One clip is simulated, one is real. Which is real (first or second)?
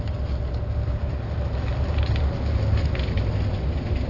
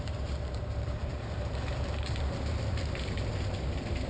first